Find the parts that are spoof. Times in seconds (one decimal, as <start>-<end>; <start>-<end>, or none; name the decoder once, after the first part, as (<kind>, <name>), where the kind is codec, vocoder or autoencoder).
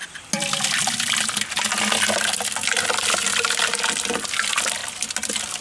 none